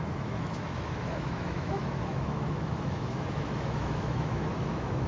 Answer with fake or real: fake